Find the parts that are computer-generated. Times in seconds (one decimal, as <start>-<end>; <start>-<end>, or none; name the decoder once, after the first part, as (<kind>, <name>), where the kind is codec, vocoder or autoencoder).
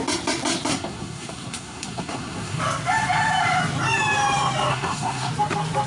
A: 0.7-2.6 (codec, SNAC); 4.7-5.3